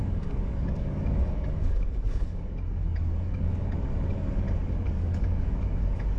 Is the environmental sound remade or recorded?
remade